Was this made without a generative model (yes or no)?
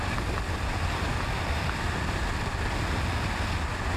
yes